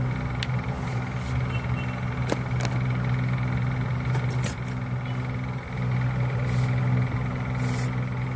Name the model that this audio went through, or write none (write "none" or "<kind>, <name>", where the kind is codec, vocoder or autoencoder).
none